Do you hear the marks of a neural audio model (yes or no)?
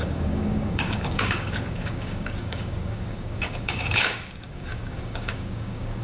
yes